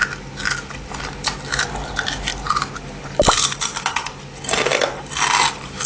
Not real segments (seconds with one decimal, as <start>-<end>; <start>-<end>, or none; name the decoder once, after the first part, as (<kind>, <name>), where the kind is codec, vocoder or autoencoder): none